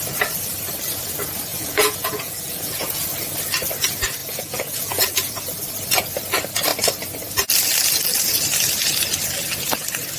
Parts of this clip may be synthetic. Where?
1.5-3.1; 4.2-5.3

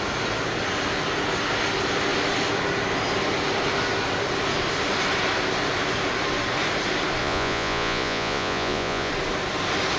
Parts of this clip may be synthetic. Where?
7.2-9.1